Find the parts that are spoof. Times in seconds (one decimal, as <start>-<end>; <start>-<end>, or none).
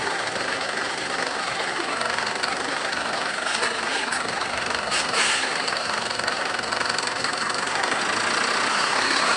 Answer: 0.0-8.0; 8.7-9.4